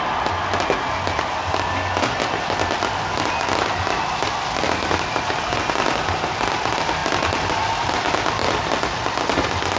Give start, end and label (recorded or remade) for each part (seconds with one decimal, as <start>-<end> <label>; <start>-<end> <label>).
0.0-9.8 recorded

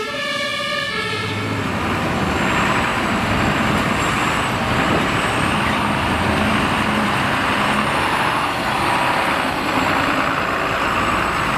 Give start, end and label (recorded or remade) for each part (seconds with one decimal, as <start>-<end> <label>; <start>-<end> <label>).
0.0-0.5 recorded; 0.5-1.3 remade; 1.3-2.9 recorded; 2.9-7.5 remade; 7.5-11.6 recorded

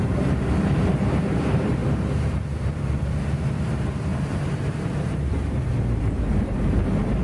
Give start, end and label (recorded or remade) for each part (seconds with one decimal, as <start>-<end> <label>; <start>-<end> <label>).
0.0-7.2 remade

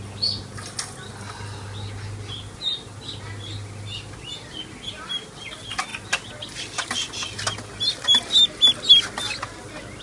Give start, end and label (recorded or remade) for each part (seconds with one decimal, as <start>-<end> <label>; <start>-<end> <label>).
0.0-10.0 recorded

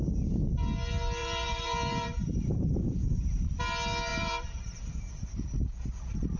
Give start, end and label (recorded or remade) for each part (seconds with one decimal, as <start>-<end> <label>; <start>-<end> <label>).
0.0-1.2 recorded; 1.2-3.4 remade; 3.4-4.1 recorded; 4.1-5.0 remade; 5.0-6.4 recorded

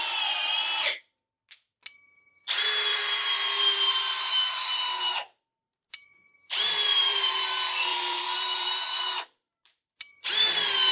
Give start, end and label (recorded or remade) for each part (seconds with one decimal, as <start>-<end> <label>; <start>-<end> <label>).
0.0-2.9 recorded; 2.9-7.3 remade; 7.3-7.9 recorded; 7.9-10.2 remade; 10.2-10.9 recorded

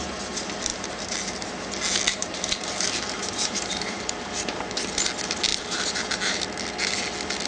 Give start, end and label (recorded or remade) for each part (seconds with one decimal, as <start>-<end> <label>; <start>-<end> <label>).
0.0-0.7 recorded; 0.7-1.5 remade; 1.5-2.1 recorded; 2.1-5.0 remade; 5.0-5.5 recorded; 5.5-6.4 remade; 6.4-7.5 recorded